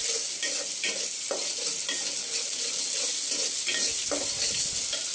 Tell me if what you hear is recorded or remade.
recorded